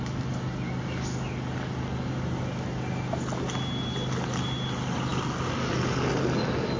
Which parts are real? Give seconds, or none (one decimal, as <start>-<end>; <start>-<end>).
0.0-6.8